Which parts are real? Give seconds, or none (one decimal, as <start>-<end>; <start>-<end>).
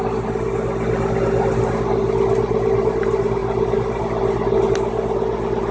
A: 0.0-5.7